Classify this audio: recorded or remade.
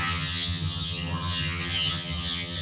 remade